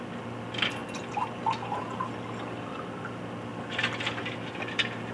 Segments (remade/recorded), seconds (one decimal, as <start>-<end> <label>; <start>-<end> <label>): 0.0-5.1 recorded